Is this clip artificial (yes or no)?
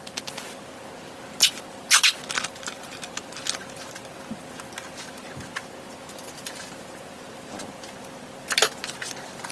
no